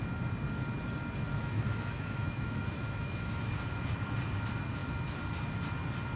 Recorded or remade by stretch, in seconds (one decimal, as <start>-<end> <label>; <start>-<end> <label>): 0.0-1.3 recorded; 1.3-3.6 remade; 3.6-6.2 recorded